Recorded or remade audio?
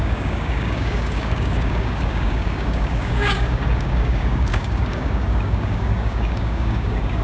remade